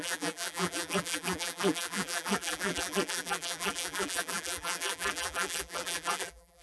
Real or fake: fake